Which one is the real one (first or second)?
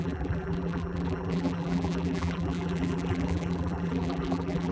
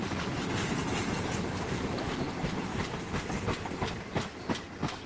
second